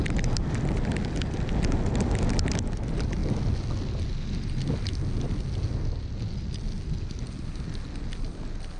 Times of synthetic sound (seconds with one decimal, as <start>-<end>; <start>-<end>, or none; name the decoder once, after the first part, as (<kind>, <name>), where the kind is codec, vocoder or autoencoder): none